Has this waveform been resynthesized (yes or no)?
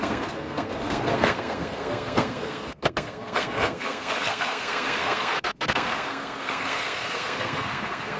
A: yes